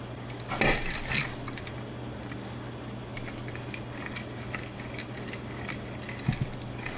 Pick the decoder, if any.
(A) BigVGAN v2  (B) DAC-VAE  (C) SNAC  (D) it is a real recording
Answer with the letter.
D